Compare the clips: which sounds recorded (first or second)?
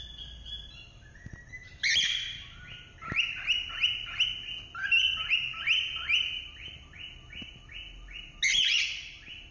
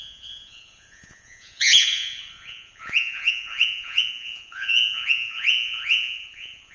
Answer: first